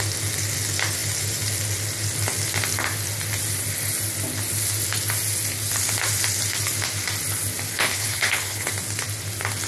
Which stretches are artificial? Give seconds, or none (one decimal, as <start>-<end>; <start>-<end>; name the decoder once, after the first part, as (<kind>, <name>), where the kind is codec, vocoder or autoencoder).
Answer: 7.7-8.7 (codec, HILCodec)